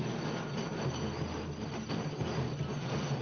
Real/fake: real